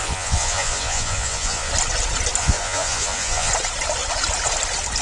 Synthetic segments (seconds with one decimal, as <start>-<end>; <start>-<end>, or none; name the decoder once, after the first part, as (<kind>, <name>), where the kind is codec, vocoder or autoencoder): 0.0-1.7 (vocoder, Vocos); 2.4-3.5